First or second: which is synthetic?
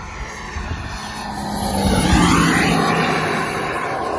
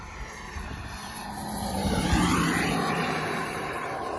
second